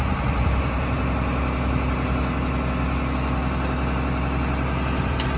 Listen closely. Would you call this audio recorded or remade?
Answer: recorded